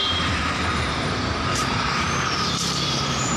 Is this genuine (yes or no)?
no